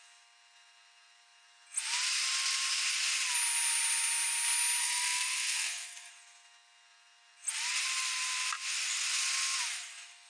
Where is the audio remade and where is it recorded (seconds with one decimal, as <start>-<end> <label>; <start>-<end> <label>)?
0.0-4.8 recorded; 4.8-6.1 remade; 6.1-10.3 recorded